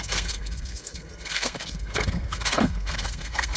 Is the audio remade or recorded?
remade